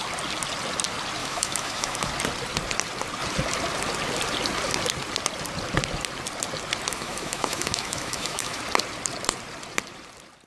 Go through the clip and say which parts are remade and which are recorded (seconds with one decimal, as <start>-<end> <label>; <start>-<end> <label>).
0.0-1.2 recorded; 1.2-2.1 remade; 2.1-6.9 recorded; 6.9-8.6 remade; 8.6-10.5 recorded